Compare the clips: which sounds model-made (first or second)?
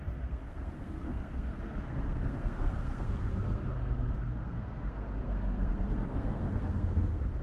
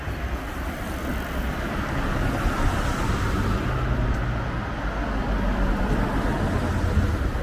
first